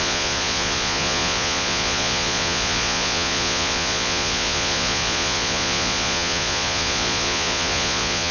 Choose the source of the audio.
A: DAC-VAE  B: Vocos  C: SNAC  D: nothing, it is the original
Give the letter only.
B